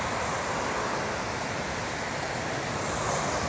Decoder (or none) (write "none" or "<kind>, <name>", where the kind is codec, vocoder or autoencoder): vocoder, BigVGAN v2